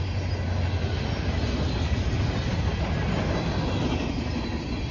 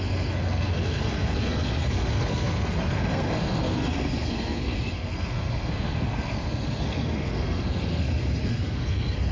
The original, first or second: first